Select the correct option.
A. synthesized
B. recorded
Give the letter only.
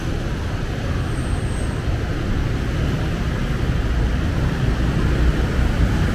B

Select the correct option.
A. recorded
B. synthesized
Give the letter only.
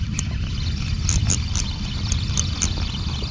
A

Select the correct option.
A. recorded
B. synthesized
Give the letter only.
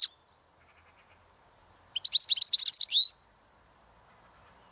A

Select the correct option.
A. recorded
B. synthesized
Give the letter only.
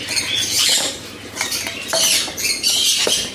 B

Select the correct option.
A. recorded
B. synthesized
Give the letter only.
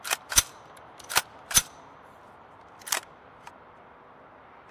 B